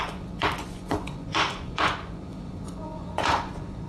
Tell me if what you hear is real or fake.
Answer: fake